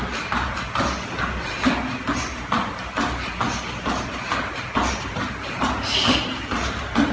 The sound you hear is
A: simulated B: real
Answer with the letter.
B